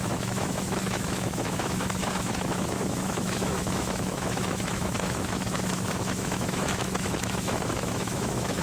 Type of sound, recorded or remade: remade